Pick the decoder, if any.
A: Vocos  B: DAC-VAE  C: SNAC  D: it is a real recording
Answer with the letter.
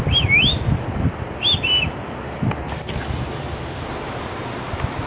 D